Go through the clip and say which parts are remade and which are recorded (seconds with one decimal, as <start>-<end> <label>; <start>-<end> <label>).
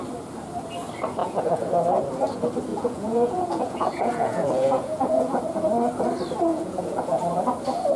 0.0-1.2 recorded; 1.2-1.7 remade; 1.7-2.7 recorded; 2.7-5.4 remade; 5.4-6.5 recorded; 6.5-7.2 remade; 7.2-8.0 recorded